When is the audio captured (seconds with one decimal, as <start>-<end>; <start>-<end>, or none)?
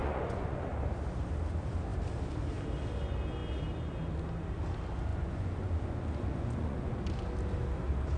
0.7-5.1; 7.0-8.2